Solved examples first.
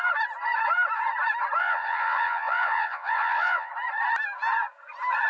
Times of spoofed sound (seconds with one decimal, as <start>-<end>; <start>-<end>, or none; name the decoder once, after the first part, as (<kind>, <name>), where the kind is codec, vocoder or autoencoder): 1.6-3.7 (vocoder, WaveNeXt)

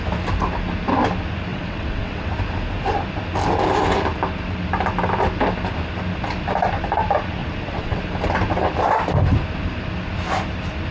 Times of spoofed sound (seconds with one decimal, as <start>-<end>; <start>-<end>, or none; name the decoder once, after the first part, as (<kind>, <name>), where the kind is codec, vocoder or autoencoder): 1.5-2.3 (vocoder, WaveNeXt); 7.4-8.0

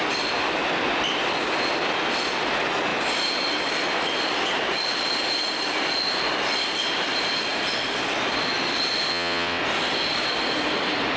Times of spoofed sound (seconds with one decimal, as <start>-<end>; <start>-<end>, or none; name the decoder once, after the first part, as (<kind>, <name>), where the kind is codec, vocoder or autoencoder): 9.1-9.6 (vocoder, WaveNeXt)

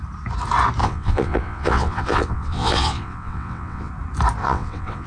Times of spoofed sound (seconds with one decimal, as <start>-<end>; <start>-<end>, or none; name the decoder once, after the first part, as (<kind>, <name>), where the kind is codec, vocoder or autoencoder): 0.8-3.9 (vocoder, WaveNeXt); 4.4-5.1

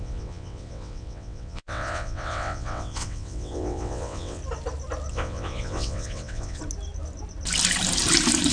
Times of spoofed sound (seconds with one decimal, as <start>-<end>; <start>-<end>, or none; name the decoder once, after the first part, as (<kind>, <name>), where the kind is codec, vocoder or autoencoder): 0.0-4.4 (vocoder, WaveNeXt); 5.1-6.6